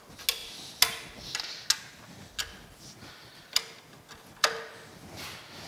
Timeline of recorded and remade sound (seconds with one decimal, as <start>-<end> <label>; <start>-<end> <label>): 0.0-5.7 recorded